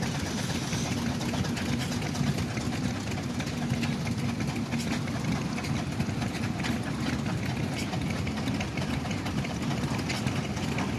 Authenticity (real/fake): real